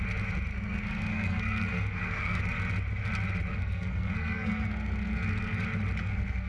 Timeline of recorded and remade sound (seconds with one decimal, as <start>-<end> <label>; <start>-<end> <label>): 0.0-0.5 recorded; 0.5-2.4 remade; 2.4-3.5 recorded; 3.5-5.6 remade; 5.6-6.0 recorded; 6.0-6.5 remade